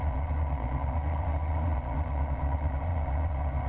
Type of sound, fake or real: fake